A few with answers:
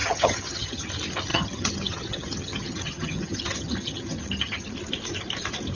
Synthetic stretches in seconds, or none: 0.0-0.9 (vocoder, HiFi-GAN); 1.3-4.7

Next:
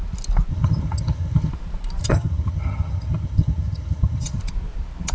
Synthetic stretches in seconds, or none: 0.5-1.5 (vocoder, HiFi-GAN); 2.0-4.4

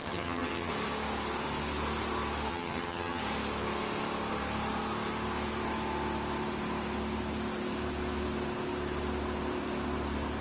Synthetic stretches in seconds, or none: 0.0-0.7 (vocoder, HiFi-GAN); 2.5-3.2

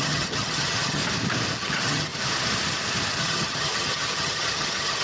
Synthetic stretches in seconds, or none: 0.0-1.0 (vocoder, HiFi-GAN); 1.6-2.1; 3.2-5.0

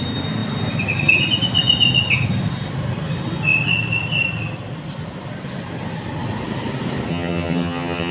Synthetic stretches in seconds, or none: 7.1-8.1 (vocoder, HiFi-GAN)